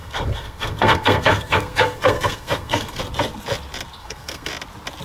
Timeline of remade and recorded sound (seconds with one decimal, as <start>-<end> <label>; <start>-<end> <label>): 0.0-3.0 remade; 3.0-4.0 recorded; 4.0-4.5 remade; 4.5-5.0 recorded